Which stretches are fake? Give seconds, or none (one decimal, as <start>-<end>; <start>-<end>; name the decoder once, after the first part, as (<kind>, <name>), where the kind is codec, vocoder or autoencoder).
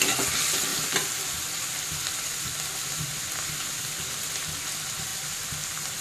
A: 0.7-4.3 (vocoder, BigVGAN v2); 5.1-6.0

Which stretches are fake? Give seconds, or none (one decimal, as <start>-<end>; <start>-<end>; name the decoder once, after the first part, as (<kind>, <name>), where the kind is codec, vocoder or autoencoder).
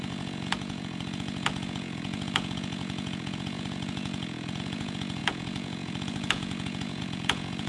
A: 0.0-7.7 (vocoder, Vocos)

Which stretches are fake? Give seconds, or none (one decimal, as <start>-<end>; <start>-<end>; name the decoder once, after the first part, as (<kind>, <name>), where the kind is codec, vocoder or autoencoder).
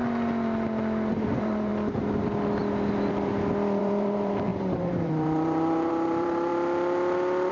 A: 1.1-1.7 (vocoder, BigVGAN v2); 3.8-6.5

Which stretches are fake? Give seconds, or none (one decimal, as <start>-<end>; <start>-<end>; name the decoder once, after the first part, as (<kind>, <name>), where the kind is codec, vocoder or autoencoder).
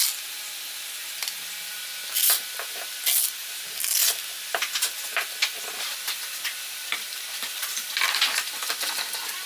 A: 7.6-8.5 (vocoder, BigVGAN v2)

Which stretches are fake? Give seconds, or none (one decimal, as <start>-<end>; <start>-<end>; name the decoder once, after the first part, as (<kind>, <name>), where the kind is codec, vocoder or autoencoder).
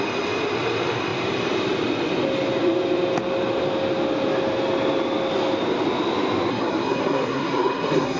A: 6.5-8.2 (codec, SNAC)